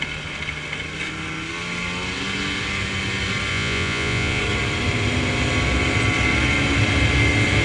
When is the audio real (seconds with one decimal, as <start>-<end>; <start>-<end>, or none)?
0.0-3.5; 4.4-7.6